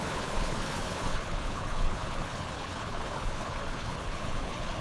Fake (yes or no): yes